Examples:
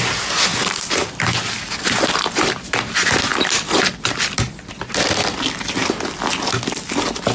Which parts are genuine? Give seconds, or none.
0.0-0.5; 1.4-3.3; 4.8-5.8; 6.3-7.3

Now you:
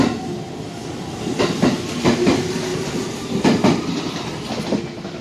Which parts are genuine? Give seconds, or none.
0.0-0.8; 1.9-2.7; 4.6-5.2

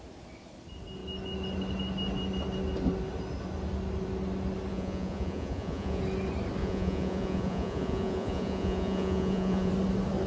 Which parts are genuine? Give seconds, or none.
0.0-4.7; 6.0-6.6; 9.7-10.3

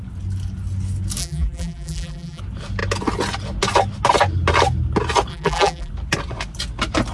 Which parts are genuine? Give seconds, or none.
0.0-1.2; 2.4-5.3; 5.9-7.1

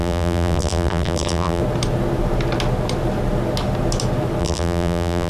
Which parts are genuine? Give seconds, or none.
1.6-4.4

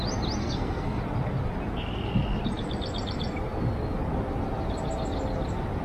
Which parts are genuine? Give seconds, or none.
0.0-0.4; 1.0-5.8

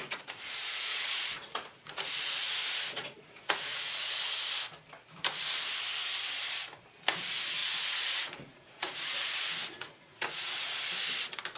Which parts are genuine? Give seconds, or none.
3.9-7.6; 10.8-11.6